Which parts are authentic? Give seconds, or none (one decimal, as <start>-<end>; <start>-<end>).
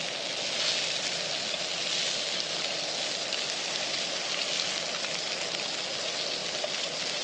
0.0-7.2